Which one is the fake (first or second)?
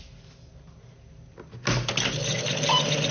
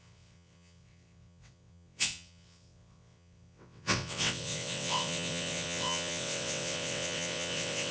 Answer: second